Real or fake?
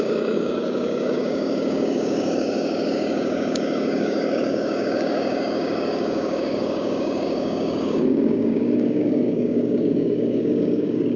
fake